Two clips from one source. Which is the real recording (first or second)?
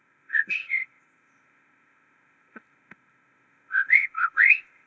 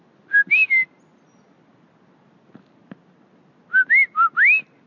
second